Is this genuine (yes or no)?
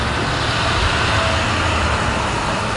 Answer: yes